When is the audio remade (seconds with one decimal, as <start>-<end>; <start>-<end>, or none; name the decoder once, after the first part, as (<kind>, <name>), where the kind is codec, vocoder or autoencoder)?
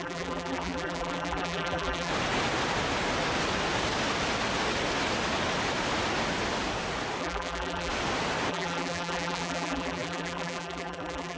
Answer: 0.0-2.1 (vocoder, BigVGAN v2); 7.2-7.9; 8.5-11.4